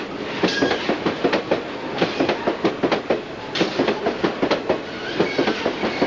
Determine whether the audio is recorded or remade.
recorded